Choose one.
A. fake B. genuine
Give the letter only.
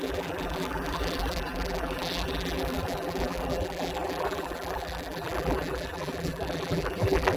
A